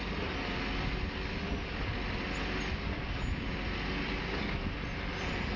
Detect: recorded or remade recorded